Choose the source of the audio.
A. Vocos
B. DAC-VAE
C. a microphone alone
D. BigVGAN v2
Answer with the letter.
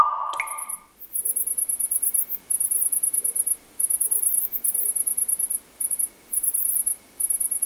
C